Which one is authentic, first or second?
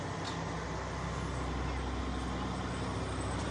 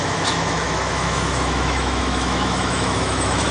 first